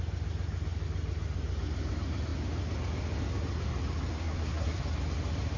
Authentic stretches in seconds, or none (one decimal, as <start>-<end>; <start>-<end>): 0.0-4.1; 4.8-5.6